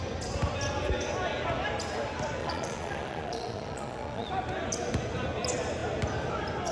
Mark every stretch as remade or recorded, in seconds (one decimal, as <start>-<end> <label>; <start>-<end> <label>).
0.0-2.4 recorded; 2.4-4.3 remade; 4.3-6.7 recorded